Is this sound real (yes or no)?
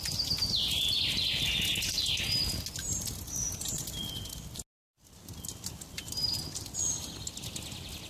yes